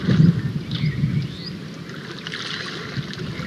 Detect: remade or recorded recorded